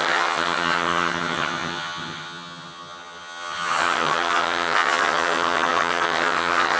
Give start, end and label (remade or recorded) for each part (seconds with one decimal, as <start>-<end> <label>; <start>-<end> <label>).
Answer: 0.0-6.8 remade